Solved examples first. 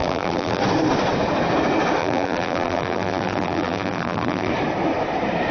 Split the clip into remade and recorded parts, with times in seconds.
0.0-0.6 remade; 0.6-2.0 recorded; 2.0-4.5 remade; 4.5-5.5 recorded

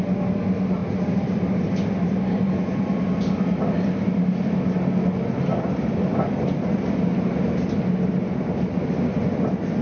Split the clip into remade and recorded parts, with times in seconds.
0.0-0.8 recorded; 0.8-2.5 remade; 2.5-9.8 recorded

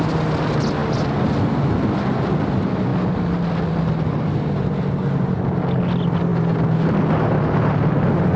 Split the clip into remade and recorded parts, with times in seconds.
0.0-8.4 recorded

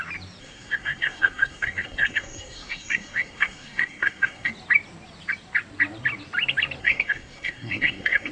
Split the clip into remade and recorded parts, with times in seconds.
0.0-0.4 recorded; 0.4-4.5 remade; 4.5-6.8 recorded; 6.8-8.3 remade

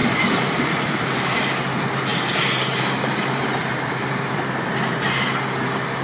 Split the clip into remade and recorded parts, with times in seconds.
0.0-1.5 remade; 1.5-2.1 recorded; 2.1-4.9 remade; 4.9-6.0 recorded

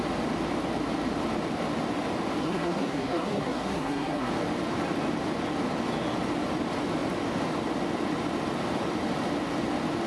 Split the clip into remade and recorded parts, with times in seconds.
0.0-2.4 recorded; 2.4-4.3 remade; 4.3-10.1 recorded